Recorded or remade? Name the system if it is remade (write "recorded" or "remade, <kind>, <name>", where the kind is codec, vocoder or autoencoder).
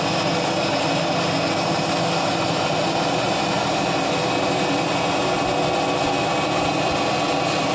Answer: recorded